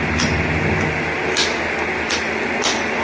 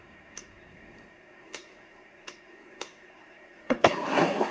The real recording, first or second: first